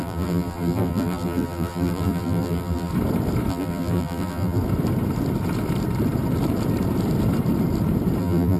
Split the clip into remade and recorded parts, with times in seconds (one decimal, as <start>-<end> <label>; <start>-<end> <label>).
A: 0.0-2.9 remade; 2.9-3.5 recorded; 3.5-4.6 remade; 4.6-8.2 recorded; 8.2-8.6 remade